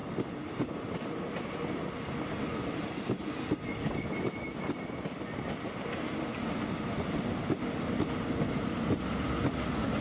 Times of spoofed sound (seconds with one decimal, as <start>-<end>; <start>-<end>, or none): none